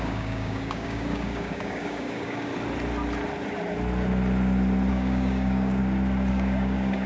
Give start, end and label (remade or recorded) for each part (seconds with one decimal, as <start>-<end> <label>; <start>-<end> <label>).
0.0-2.5 remade; 2.5-4.9 recorded; 4.9-5.8 remade; 5.8-6.3 recorded; 6.3-7.1 remade